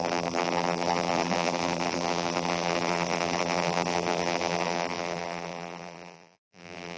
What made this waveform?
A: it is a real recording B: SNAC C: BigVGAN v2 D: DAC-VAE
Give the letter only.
C